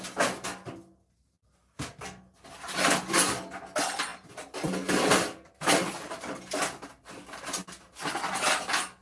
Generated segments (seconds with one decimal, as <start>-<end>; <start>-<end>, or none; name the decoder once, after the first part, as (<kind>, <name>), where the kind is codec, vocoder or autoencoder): none